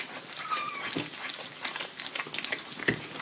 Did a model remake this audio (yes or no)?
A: no